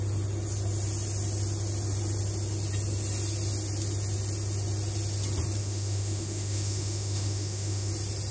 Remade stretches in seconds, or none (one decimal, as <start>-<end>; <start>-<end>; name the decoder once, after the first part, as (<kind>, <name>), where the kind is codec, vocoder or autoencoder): 5.6-7.9 (autoencoder, DAC-VAE)